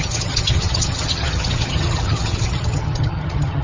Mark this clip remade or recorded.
remade